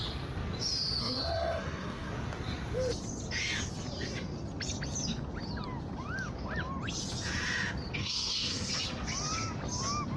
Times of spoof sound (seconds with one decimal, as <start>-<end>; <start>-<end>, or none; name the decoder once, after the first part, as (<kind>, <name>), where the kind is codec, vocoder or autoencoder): 1.0-2.1 (codec, SNAC); 8.0-8.7